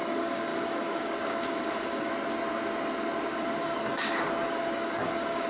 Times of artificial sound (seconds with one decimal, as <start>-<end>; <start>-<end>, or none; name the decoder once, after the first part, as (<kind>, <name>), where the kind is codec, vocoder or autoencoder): 0.0-2.1 (codec, DAC); 3.3-5.5

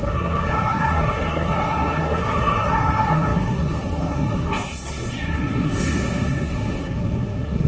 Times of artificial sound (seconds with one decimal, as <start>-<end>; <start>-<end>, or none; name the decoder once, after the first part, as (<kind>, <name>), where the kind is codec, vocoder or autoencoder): 0.0-7.7 (codec, SNAC)

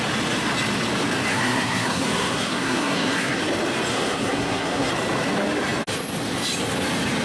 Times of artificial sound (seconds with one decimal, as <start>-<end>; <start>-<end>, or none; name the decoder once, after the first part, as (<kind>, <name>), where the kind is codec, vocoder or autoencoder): 1.3-3.4 (codec, SNAC); 3.9-4.9

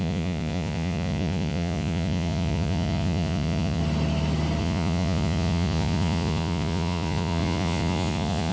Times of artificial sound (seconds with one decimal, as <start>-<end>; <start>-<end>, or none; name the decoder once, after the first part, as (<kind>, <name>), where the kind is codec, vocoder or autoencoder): 0.0-3.8 (vocoder, Vocos); 4.6-8.5

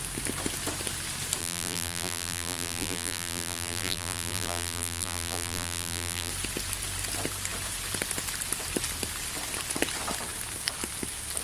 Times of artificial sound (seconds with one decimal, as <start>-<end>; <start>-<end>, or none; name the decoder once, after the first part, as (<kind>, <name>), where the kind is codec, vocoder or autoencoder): 1.4-6.3 (vocoder, BigVGAN v2)

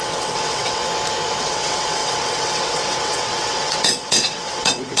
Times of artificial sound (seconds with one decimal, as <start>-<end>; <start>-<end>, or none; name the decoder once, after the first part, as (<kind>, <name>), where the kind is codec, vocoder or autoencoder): 0.0-0.8 (vocoder, WaveNeXt); 1.4-5.0

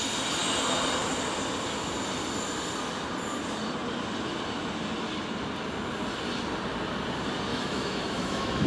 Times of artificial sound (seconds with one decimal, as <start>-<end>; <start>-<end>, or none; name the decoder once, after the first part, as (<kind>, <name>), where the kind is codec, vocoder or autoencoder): 7.5-8.7 (autoencoder, DAC-VAE)